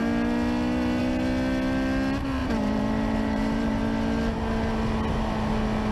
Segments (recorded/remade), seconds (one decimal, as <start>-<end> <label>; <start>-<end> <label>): 0.0-2.4 recorded; 2.4-3.8 remade; 3.8-5.9 recorded